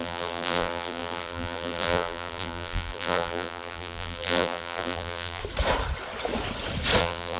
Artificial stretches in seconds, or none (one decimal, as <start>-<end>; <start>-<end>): 0.0-5.4; 7.0-7.4